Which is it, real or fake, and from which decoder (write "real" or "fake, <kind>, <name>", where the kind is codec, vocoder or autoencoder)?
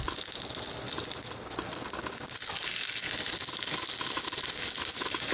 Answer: real